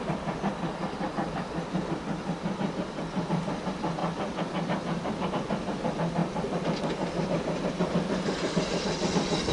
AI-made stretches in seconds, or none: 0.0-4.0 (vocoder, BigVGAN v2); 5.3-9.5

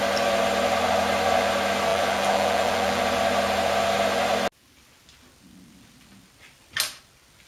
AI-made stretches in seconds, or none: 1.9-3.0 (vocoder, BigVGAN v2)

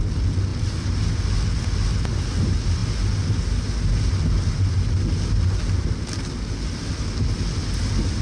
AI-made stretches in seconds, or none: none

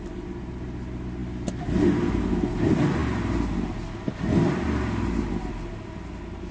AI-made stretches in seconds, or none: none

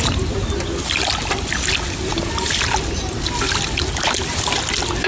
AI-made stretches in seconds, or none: none

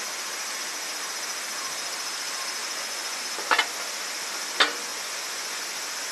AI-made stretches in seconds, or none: 2.6-3.2 (vocoder, Vocos); 4.9-5.6